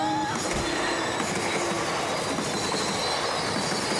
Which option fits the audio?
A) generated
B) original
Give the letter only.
B